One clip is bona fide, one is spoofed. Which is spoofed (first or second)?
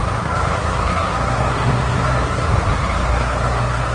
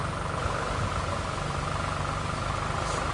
first